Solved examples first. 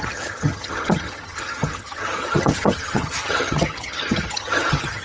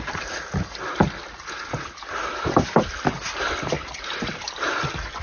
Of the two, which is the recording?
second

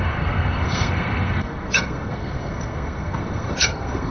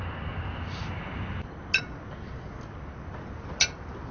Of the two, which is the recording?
second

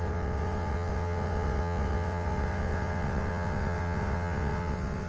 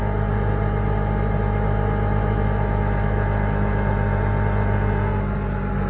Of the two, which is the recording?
second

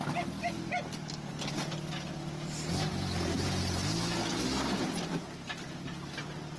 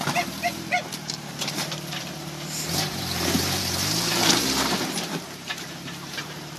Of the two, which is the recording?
first